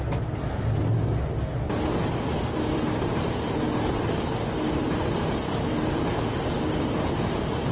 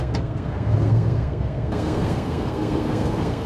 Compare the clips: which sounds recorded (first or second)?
first